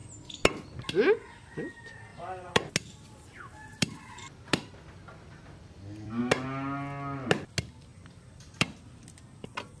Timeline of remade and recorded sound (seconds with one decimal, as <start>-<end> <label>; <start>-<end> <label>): 0.0-2.1 recorded; 2.1-2.7 remade; 2.7-3.6 recorded; 3.6-6.2 remade; 6.2-7.9 recorded; 7.9-8.7 remade; 8.7-9.8 recorded